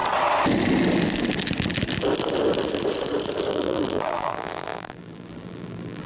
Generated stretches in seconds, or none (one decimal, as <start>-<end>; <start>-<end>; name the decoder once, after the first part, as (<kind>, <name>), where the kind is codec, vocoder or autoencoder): 3.5-6.1 (vocoder, BigVGAN v2)